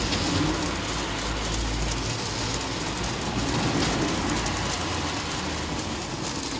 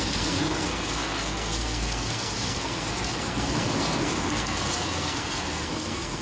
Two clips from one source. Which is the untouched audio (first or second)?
first